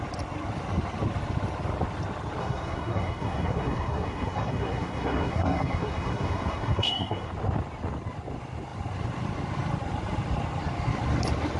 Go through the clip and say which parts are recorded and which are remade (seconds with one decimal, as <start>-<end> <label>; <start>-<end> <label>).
0.0-2.4 recorded; 2.4-7.3 remade; 7.3-11.6 recorded